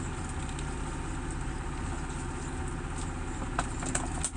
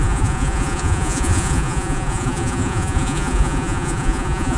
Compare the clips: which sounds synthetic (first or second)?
second